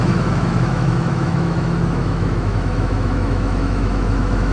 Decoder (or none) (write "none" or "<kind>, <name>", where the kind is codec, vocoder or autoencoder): autoencoder, DAC-VAE